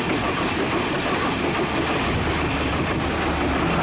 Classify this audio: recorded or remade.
recorded